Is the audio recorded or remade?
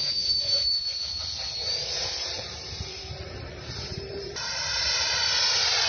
remade